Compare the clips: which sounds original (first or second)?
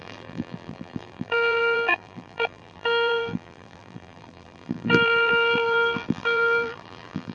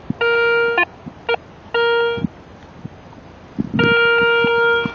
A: second